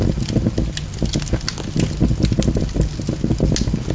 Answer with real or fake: real